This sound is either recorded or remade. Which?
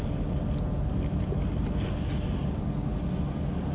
recorded